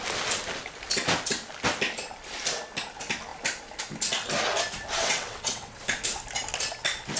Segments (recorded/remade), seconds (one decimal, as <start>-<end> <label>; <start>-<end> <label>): 0.0-5.0 recorded; 5.0-5.8 remade; 5.8-7.2 recorded